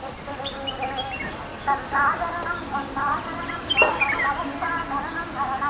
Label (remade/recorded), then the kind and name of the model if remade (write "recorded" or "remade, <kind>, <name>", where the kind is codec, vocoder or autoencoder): recorded